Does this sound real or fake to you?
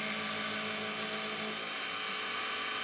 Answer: real